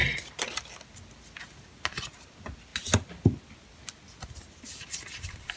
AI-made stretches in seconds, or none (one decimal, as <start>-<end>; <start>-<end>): 0.0-0.6